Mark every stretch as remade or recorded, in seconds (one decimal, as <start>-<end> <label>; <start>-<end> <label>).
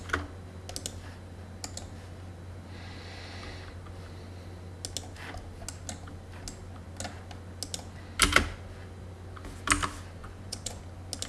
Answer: 0.0-10.2 recorded; 10.2-10.8 remade; 10.8-11.3 recorded